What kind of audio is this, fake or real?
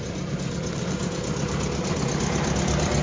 fake